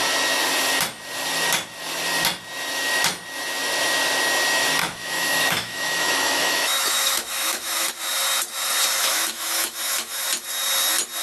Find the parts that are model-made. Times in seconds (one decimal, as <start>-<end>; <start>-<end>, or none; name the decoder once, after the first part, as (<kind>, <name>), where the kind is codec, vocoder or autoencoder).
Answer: 4.8-7.9 (autoencoder, DAC-VAE); 9.0-10.3